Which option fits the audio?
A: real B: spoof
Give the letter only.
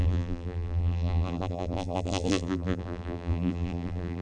B